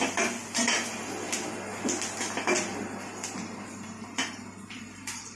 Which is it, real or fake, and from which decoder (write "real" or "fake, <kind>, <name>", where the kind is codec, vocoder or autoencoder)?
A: real